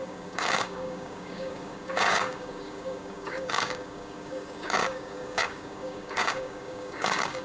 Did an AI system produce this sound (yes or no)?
yes